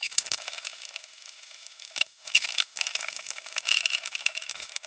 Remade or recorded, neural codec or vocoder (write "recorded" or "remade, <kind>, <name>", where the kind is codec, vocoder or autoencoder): remade, autoencoder, DAC-VAE